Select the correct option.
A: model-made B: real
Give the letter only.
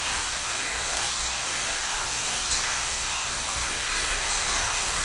A